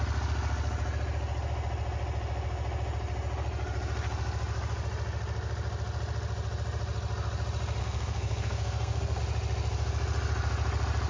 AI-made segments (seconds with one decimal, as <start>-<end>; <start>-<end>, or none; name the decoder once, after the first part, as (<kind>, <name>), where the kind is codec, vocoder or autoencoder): 7.8-9.2 (codec, SNAC)